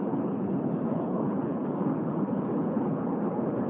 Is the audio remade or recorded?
remade